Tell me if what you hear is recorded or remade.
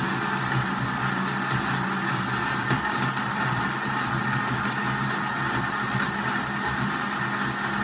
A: recorded